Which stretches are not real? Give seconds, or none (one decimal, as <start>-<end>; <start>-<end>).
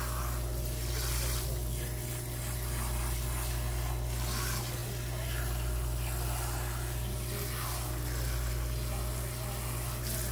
none